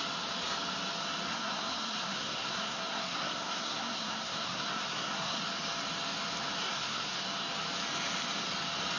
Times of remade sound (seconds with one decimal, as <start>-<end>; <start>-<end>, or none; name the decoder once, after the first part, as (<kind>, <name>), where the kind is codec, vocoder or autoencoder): 1.3-5.4 (codec, SNAC); 6.6-7.2